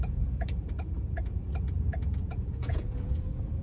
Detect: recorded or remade remade